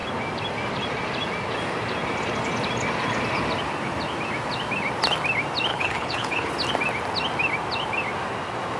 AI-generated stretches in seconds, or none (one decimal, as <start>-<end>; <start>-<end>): 5.7-6.5

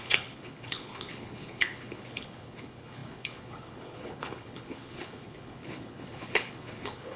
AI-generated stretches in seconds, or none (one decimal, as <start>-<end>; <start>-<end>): 0.0-7.2

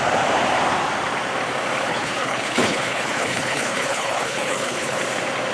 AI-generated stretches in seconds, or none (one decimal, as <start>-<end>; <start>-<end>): 1.9-5.0

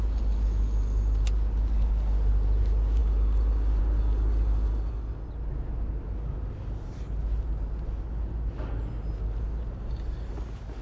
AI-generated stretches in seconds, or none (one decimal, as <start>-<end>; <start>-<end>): none

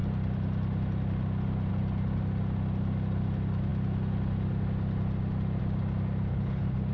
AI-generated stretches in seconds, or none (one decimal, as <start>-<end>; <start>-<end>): 6.3-6.9

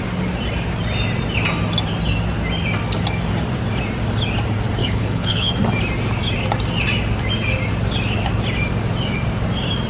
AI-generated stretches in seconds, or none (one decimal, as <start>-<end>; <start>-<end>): 4.8-5.5

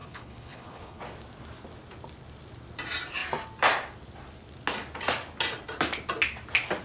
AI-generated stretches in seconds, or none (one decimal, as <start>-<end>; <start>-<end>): 0.0-1.0